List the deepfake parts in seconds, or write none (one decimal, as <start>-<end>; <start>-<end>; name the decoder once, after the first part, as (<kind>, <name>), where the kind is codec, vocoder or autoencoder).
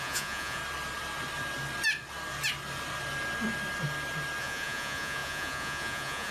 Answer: 0.0-0.6 (vocoder, Vocos); 4.4-6.3